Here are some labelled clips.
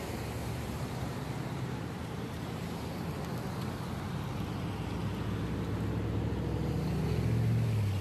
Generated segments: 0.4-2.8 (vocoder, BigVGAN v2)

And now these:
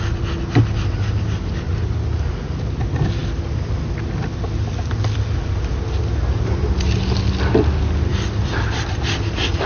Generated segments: none

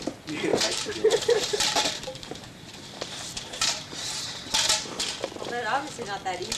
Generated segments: 0.5-4.5 (vocoder, BigVGAN v2)

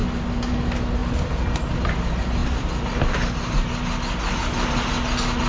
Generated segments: none

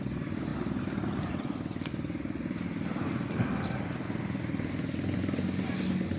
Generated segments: 0.5-1.9 (vocoder, BigVGAN v2)

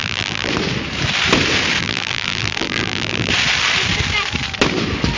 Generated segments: 0.0-0.5 (vocoder, BigVGAN v2); 1.8-3.3

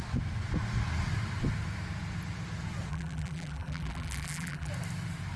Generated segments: 2.9-4.7 (vocoder, BigVGAN v2)

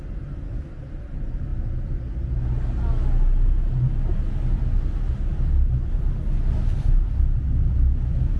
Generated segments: none